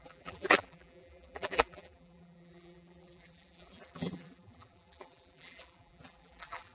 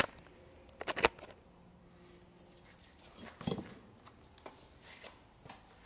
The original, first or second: second